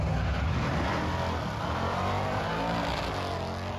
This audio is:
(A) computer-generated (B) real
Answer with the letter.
B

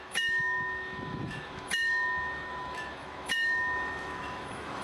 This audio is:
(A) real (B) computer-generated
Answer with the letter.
B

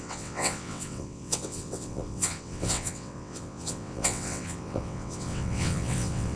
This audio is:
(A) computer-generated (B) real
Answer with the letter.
A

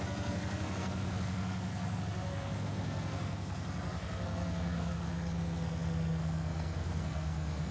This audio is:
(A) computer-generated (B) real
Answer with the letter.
A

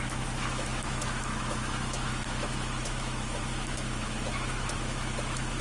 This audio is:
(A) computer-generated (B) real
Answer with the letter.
A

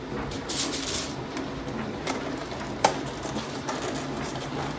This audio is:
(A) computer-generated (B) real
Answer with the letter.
A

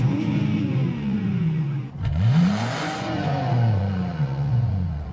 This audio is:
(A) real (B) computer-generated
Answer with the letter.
B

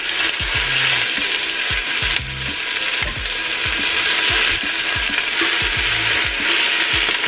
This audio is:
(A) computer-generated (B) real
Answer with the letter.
B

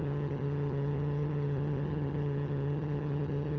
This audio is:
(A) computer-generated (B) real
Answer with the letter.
A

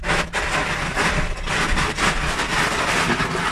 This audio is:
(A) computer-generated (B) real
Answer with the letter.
A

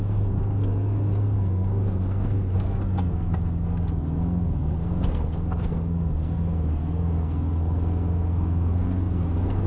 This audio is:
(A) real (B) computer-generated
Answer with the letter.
B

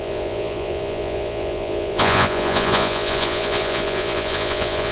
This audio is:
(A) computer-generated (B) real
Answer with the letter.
A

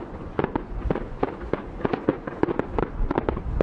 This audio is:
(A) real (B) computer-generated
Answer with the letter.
B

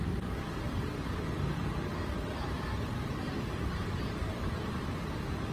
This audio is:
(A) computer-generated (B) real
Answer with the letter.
A